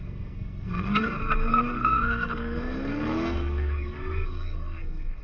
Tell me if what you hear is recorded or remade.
remade